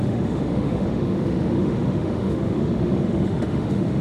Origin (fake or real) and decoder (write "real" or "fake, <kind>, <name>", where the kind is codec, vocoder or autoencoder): fake, autoencoder, DAC-VAE